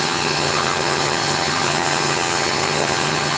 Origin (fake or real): fake